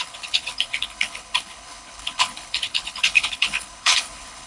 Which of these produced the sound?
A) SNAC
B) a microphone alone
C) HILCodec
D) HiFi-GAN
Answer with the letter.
C